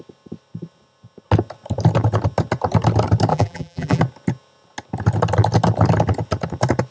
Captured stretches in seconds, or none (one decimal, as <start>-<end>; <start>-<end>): 0.0-3.3; 4.0-6.9